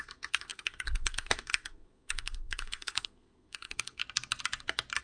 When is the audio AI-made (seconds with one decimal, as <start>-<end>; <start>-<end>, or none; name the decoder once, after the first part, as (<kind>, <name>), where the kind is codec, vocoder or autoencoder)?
0.0-4.0 (codec, SNAC)